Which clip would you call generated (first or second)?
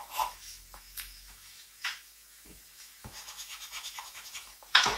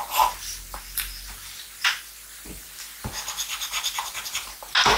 first